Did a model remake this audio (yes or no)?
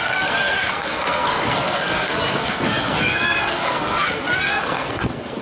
yes